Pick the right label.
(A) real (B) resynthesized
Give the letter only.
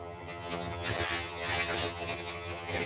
B